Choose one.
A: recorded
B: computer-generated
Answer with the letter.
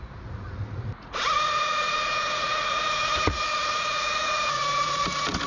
B